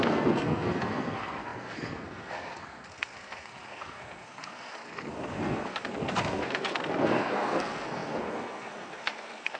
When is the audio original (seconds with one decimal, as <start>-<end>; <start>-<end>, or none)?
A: none